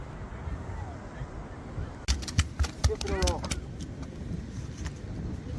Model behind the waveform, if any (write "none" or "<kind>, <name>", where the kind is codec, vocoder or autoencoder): none